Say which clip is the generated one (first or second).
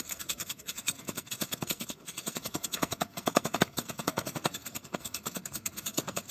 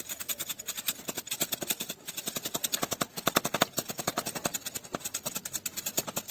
first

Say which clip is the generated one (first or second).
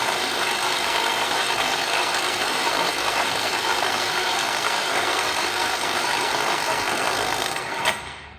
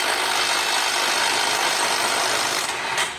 first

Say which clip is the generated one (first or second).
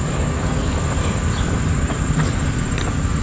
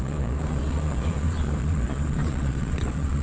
second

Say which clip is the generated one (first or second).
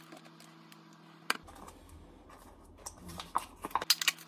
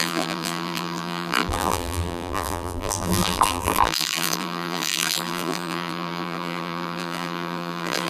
second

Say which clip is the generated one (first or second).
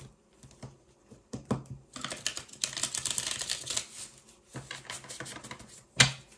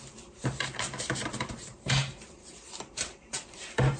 second